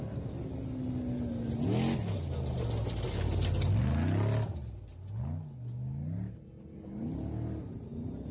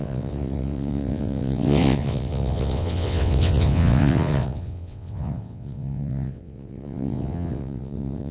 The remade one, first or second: second